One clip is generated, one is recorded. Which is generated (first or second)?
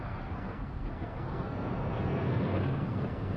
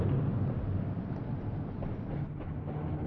first